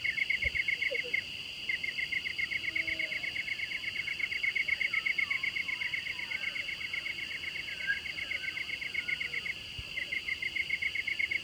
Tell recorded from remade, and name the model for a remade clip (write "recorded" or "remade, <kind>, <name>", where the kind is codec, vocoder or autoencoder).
recorded